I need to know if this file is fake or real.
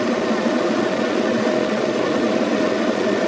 fake